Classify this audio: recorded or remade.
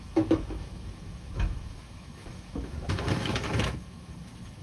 remade